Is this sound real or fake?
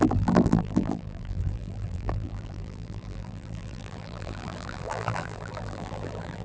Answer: fake